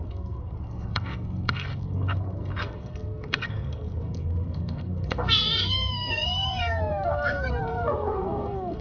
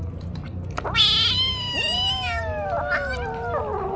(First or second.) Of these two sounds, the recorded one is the second